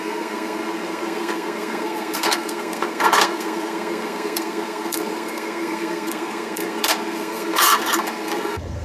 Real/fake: fake